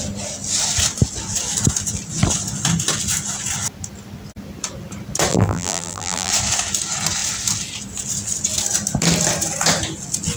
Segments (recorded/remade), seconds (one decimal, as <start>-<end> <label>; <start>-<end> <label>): 0.0-5.3 recorded; 5.3-6.3 remade; 6.3-10.4 recorded